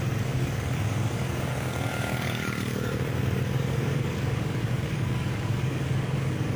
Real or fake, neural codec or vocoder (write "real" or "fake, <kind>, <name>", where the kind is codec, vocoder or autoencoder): fake, codec, DAC